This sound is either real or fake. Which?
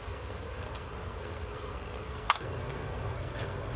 fake